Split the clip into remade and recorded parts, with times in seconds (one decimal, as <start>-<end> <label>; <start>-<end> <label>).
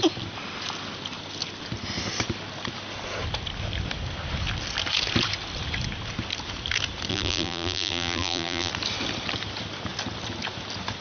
0.0-7.1 recorded; 7.1-8.7 remade; 8.7-11.0 recorded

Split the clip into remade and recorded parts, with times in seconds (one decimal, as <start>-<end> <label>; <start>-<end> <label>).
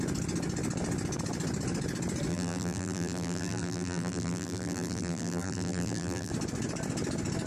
0.0-2.3 recorded; 2.3-6.3 remade; 6.3-7.5 recorded